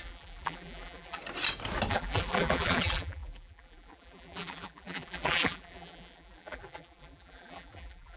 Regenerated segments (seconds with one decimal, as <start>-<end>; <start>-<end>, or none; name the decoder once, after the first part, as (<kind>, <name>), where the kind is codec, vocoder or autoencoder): 0.0-1.2 (vocoder, BigVGAN v2); 1.9-8.2